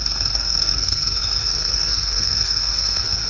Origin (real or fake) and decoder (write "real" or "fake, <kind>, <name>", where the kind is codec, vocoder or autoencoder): fake, codec, SNAC